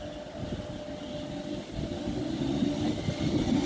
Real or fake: real